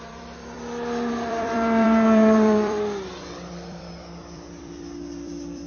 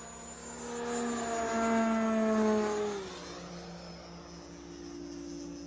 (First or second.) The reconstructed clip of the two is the first